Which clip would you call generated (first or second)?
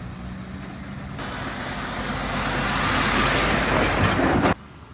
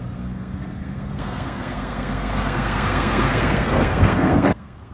second